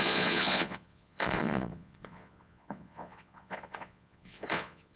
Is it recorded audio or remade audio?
remade